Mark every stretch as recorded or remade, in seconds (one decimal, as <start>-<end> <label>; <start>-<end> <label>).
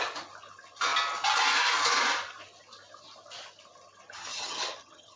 0.0-4.3 recorded; 4.3-5.2 remade